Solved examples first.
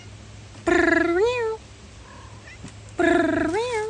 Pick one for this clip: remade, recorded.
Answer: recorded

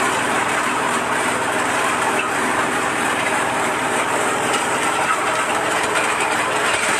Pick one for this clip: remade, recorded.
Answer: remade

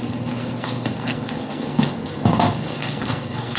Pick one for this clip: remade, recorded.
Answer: remade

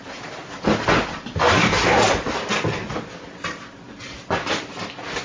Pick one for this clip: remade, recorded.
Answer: recorded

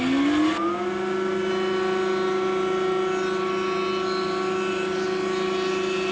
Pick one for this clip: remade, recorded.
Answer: recorded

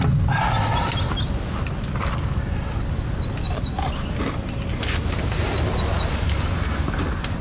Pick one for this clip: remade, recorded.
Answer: recorded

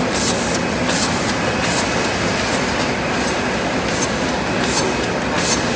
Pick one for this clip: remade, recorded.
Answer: recorded